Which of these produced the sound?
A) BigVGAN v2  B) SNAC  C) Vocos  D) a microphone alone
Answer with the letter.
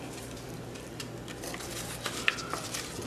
A